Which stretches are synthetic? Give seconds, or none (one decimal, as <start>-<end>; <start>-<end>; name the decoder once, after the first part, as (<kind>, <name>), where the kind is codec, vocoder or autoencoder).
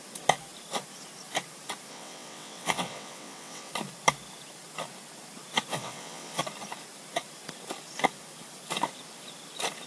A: 1.9-3.7 (vocoder, WaveNeXt); 5.7-6.4